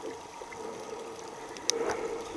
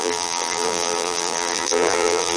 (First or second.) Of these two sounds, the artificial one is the second